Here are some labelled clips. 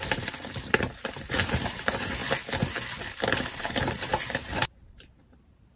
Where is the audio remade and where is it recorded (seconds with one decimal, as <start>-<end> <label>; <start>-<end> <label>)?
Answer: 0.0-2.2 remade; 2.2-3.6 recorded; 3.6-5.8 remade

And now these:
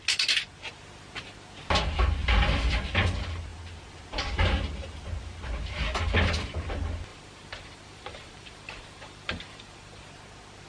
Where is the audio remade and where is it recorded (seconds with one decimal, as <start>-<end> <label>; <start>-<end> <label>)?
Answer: 0.0-7.1 recorded; 7.1-10.1 remade; 10.1-10.7 recorded

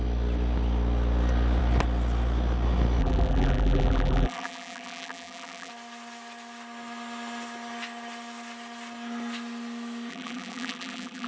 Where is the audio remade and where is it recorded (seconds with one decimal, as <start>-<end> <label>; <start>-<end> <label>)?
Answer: 0.0-3.0 recorded; 3.0-5.7 remade; 5.7-10.1 recorded; 10.1-11.3 remade